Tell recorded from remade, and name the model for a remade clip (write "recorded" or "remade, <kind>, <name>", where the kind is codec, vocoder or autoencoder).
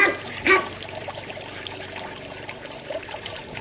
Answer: remade, vocoder, BigVGAN v2